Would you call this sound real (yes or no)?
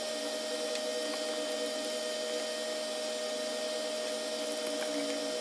yes